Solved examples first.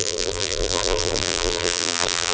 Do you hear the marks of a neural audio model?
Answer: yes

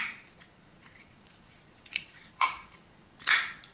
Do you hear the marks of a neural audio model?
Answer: yes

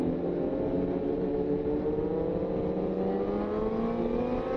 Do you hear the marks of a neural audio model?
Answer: no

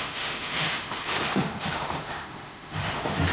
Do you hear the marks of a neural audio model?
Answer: yes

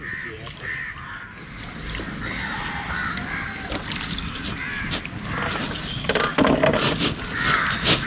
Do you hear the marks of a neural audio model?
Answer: no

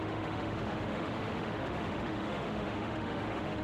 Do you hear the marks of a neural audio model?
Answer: yes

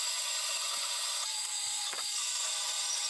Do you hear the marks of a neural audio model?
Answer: yes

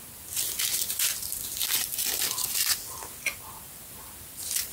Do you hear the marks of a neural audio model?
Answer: no